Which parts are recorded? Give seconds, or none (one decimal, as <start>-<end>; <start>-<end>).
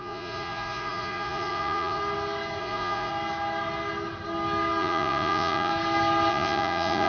2.0-2.6; 3.1-4.8; 5.7-6.3